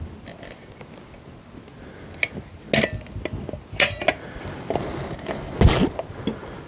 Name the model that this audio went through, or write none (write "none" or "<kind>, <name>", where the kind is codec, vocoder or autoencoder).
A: none